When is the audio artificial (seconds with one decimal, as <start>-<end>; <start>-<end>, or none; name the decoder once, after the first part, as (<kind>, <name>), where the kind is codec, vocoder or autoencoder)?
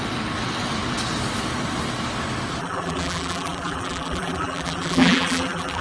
2.6-5.8 (vocoder, BigVGAN v2)